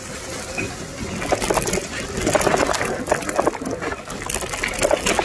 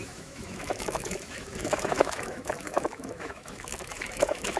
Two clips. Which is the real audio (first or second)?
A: first